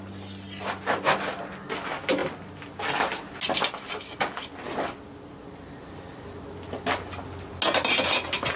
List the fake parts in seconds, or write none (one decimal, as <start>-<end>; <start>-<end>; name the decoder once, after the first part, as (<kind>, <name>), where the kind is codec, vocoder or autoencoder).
none